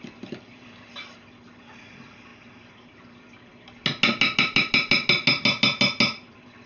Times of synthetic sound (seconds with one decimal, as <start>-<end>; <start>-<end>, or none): 0.0-2.3; 6.3-6.7